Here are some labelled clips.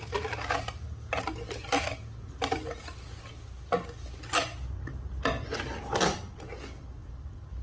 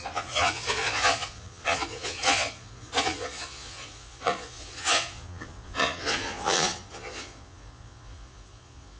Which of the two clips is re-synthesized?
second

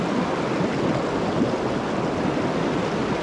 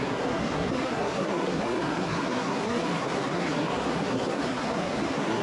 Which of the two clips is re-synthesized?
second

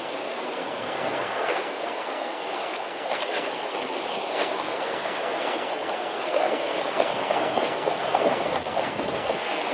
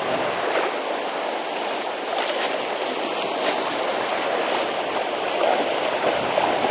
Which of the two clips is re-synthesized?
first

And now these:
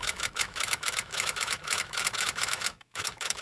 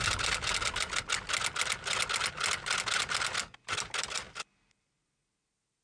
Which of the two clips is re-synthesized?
first